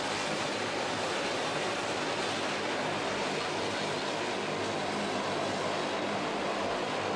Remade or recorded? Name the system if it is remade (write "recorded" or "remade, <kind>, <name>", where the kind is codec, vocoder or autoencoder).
recorded